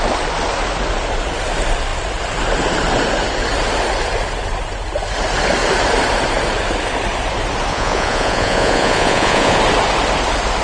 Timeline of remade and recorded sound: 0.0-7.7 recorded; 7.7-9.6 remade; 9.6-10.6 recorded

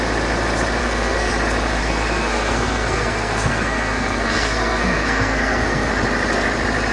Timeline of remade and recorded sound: 0.0-0.8 recorded; 0.8-1.3 remade; 1.3-1.8 recorded; 1.8-5.9 remade; 5.9-6.9 recorded

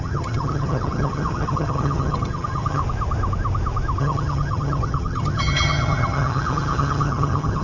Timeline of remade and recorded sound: 0.0-2.8 remade; 2.8-4.0 recorded; 4.0-7.6 remade

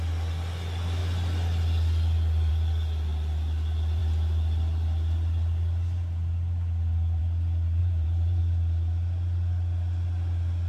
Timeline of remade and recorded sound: 0.0-7.8 recorded; 7.8-8.4 remade; 8.4-10.7 recorded

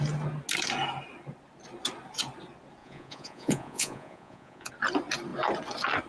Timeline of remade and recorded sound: 0.0-2.8 recorded; 2.8-4.7 remade; 4.7-6.1 recorded